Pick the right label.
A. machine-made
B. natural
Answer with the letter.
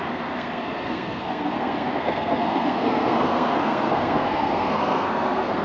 A